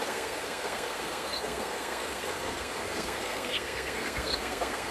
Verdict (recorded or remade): remade